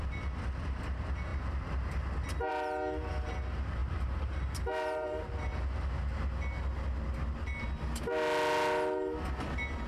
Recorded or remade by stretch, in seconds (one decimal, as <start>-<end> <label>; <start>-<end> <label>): 0.0-3.8 recorded; 3.8-5.5 remade; 5.5-9.9 recorded